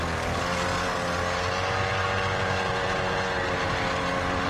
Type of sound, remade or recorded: recorded